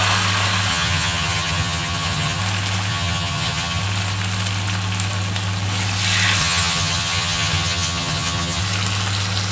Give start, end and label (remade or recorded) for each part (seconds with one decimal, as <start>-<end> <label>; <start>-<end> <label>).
0.0-0.7 recorded; 0.7-2.4 remade; 2.4-2.9 recorded; 2.9-3.8 remade; 3.8-6.4 recorded; 6.4-8.6 remade; 8.6-9.5 recorded